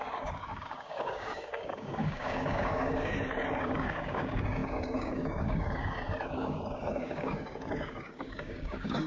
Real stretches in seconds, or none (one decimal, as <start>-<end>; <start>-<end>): none